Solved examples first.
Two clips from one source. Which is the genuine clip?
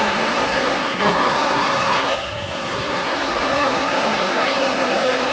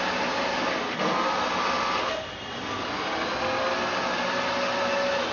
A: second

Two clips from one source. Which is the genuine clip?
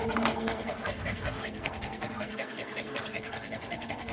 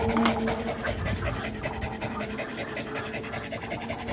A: second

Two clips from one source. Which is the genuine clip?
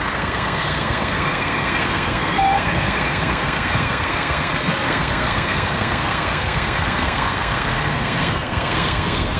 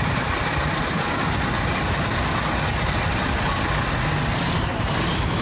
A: second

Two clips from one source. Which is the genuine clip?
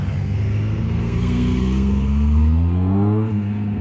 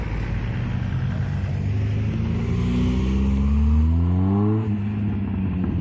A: second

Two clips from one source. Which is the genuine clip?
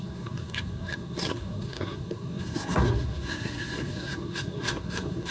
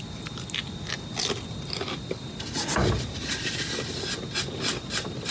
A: second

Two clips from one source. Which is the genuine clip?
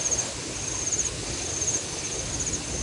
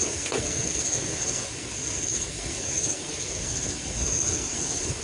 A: first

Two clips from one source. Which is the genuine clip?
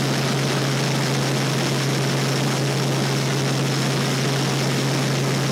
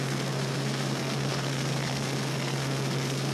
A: first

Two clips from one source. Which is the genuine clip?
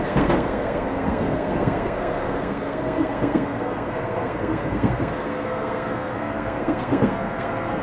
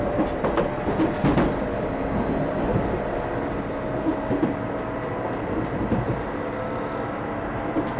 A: second